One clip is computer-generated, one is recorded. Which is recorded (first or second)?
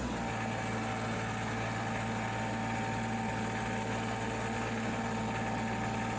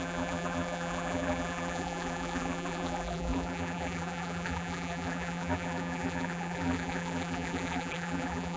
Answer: first